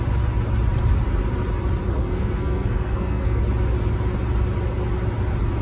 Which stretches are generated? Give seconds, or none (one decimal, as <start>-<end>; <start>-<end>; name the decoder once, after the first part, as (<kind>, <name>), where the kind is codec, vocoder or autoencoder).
2.0-3.4 (codec, SNAC)